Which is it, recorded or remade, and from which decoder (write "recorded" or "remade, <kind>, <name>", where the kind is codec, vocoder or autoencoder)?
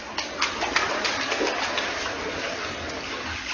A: recorded